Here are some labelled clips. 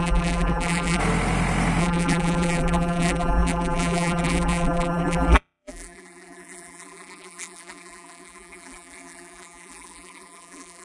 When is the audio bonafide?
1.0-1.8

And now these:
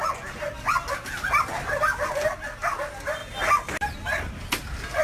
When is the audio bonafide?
0.0-5.0

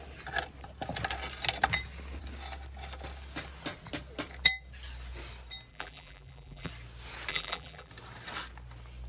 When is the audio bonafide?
0.0-5.7; 6.7-7.3; 7.9-9.1

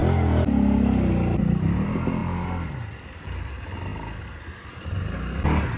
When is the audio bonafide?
0.0-5.8

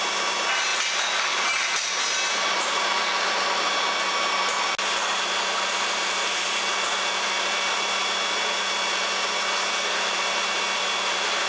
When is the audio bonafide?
0.0-11.5

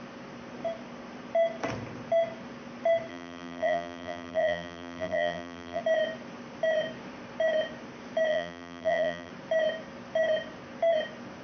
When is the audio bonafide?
0.0-3.1; 5.8-8.3; 9.3-11.4